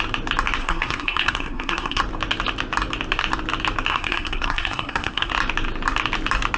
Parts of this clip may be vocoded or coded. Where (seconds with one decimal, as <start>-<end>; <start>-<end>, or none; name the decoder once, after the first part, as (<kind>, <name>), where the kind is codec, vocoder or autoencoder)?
0.6-2.0 (codec, SNAC); 3.9-5.3